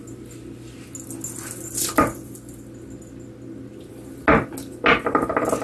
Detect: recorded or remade recorded